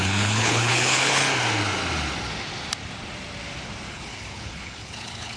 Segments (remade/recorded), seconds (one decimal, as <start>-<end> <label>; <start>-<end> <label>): 0.0-1.2 remade; 1.2-3.9 recorded; 3.9-5.4 remade